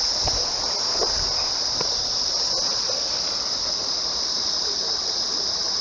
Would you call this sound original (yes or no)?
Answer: yes